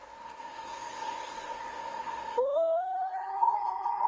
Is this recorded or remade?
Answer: remade